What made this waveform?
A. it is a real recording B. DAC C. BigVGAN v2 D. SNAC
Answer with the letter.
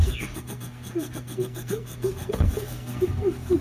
D